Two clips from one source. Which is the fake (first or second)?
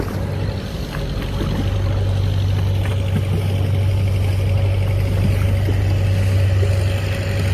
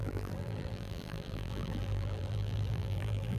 second